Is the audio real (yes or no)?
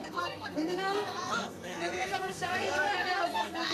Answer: no